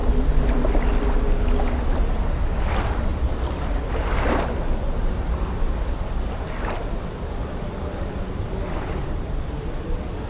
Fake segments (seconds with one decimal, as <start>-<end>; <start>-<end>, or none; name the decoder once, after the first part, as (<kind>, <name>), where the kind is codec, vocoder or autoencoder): none